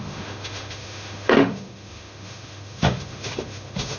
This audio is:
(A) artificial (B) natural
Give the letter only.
A